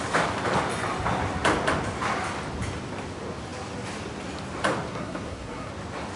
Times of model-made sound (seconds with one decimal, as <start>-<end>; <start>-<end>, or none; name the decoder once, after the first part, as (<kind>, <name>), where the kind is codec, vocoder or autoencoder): 4.9-5.7 (codec, SNAC)